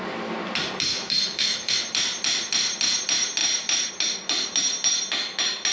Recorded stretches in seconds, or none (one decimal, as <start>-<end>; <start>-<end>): 0.0-0.9; 1.7-5.7

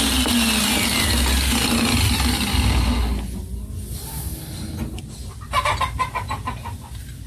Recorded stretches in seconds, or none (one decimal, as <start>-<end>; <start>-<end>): 0.0-7.3

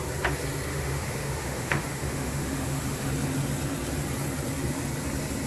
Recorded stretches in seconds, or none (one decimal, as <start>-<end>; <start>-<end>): 0.0-0.7; 3.1-5.5

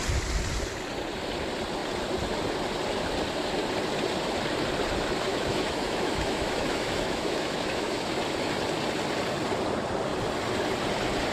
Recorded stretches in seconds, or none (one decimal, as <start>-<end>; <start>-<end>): 0.0-5.3; 8.1-11.3

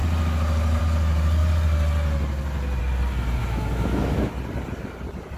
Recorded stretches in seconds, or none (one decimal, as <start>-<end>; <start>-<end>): 0.0-3.4; 4.3-5.4

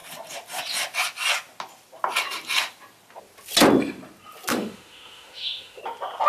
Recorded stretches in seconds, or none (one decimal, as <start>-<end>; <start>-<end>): 0.0-4.5; 5.8-6.3